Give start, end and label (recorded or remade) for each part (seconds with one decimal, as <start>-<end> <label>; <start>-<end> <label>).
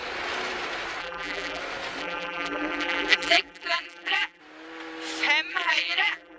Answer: 0.0-1.0 recorded; 1.0-1.6 remade; 1.6-2.0 recorded; 2.0-4.4 remade; 4.4-5.5 recorded; 5.5-6.4 remade